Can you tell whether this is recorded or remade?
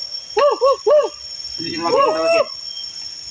recorded